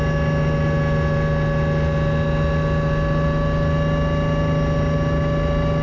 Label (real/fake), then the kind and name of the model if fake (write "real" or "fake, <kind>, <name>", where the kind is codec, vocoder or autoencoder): real